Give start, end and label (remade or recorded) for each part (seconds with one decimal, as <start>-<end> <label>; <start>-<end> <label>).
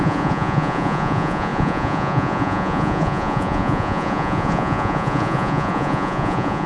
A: 0.0-6.7 remade